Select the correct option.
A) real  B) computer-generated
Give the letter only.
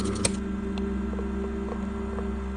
A